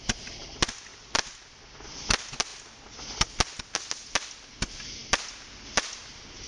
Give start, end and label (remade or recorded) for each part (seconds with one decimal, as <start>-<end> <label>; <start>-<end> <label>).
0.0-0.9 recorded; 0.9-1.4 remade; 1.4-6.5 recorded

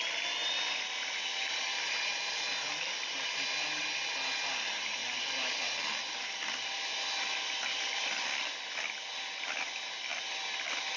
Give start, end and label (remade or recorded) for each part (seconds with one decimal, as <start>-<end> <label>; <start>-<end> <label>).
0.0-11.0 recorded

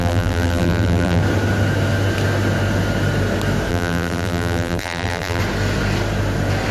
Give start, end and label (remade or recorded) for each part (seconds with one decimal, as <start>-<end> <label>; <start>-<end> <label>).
0.0-1.2 remade; 1.2-3.7 recorded; 3.7-5.4 remade; 5.4-6.7 recorded

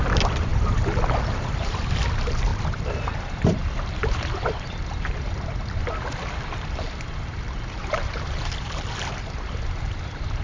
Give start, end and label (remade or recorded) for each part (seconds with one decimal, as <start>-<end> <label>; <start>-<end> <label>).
0.0-10.4 remade

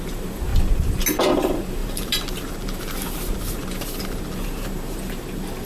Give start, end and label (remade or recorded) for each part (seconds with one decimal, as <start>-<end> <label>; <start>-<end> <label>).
0.0-0.5 remade; 0.5-1.3 recorded; 1.3-5.7 remade

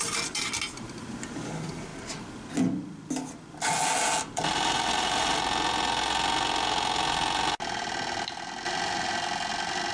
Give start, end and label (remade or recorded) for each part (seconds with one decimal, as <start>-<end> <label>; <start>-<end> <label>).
0.0-9.9 recorded

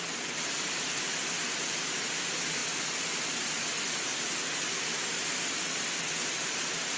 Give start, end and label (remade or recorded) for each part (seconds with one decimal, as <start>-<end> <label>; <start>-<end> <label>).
0.0-4.1 remade; 4.1-4.6 recorded; 4.6-7.0 remade